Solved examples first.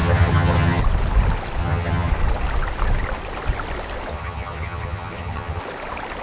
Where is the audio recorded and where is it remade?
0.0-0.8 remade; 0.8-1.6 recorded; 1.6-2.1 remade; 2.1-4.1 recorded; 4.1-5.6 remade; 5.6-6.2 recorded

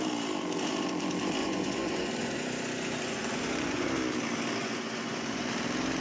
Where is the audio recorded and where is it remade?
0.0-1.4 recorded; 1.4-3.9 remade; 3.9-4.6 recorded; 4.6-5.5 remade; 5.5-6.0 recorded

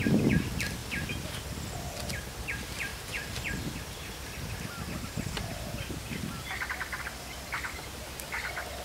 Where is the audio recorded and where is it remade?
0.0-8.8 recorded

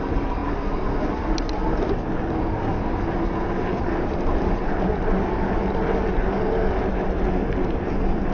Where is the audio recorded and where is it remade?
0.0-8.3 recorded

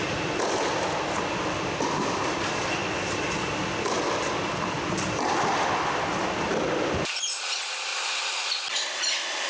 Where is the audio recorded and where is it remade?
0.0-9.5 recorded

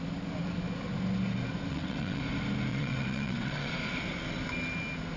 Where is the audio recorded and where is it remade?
0.0-1.7 recorded; 1.7-2.2 remade; 2.2-2.7 recorded; 2.7-3.7 remade; 3.7-5.2 recorded

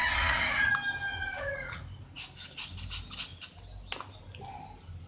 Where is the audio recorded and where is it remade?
0.0-0.7 remade; 0.7-1.1 recorded; 1.1-1.8 remade; 1.8-5.1 recorded